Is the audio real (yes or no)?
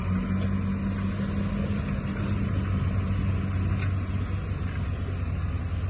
yes